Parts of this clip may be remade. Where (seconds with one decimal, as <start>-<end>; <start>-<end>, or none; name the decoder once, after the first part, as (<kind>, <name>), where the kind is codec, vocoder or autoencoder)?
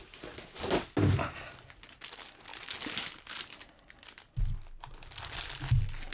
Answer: none